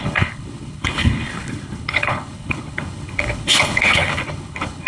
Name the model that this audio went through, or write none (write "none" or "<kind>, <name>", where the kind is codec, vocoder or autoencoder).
codec, HILCodec